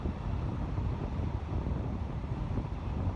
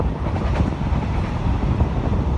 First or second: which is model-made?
first